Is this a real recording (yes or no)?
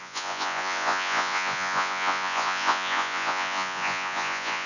no